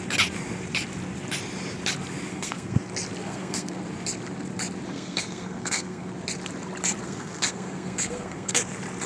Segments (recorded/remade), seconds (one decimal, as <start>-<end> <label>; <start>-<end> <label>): 0.0-2.3 recorded; 2.3-2.8 remade; 2.8-3.2 recorded; 3.2-3.8 remade; 3.8-4.9 recorded; 4.9-6.1 remade; 6.1-7.0 recorded; 7.0-8.6 remade; 8.6-9.1 recorded